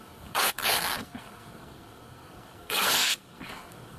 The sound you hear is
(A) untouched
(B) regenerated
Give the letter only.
B